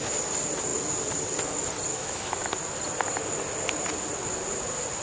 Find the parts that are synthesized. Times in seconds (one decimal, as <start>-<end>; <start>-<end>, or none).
1.9-2.5